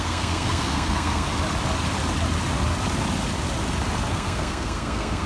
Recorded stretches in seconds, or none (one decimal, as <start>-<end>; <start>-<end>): 1.3-4.1